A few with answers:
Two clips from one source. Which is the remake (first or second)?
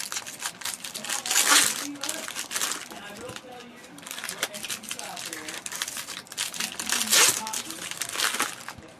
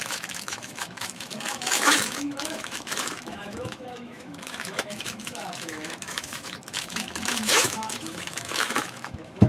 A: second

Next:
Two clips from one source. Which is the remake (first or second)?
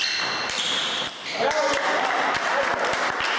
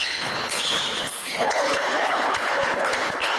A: second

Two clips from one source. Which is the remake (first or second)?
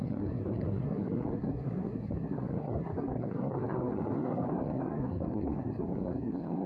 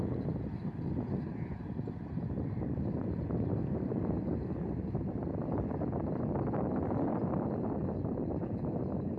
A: first